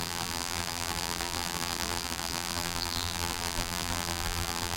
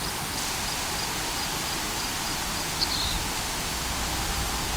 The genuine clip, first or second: second